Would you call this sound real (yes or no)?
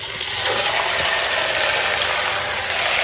yes